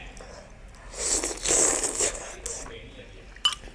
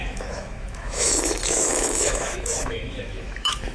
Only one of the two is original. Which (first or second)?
first